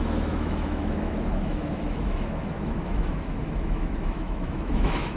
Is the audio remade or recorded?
remade